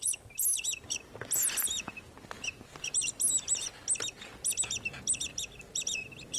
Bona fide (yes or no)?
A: yes